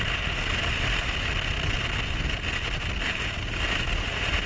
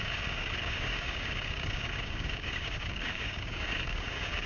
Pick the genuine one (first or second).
first